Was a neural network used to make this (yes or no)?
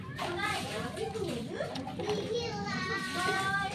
no